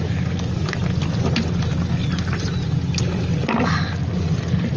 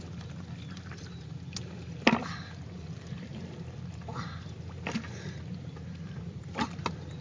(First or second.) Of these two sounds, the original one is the first